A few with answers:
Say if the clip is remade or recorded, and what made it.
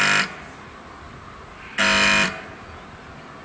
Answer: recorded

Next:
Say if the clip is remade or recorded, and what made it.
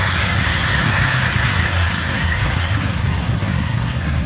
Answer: remade, codec, SNAC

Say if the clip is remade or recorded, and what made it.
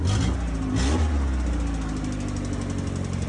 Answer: recorded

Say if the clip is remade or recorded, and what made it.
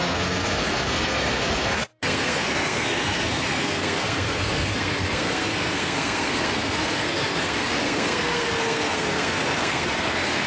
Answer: remade, codec, SNAC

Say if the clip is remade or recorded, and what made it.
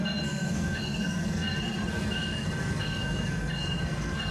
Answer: remade, codec, SNAC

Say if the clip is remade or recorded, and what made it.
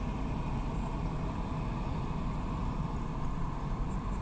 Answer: recorded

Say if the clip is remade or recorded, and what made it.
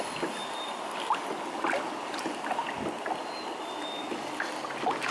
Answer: recorded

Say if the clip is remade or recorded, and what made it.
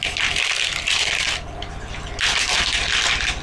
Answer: recorded